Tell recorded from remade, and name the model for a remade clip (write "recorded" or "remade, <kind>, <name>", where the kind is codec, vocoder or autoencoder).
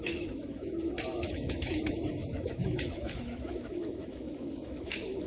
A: remade, autoencoder, DAC-VAE